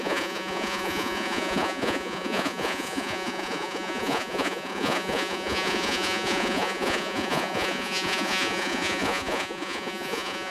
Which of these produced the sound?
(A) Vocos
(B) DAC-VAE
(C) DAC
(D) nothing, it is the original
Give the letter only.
A